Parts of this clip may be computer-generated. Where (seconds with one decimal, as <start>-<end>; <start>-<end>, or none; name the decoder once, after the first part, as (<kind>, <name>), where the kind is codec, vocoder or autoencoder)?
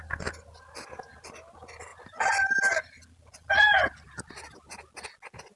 none